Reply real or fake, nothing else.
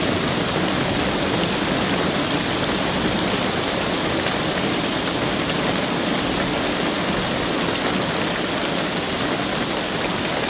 real